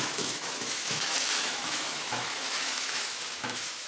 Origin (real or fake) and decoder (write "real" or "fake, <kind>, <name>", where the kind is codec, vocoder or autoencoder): fake, autoencoder, DAC-VAE